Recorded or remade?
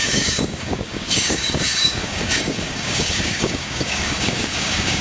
remade